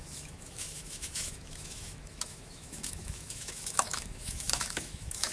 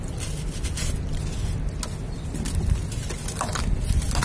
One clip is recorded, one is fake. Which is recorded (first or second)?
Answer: second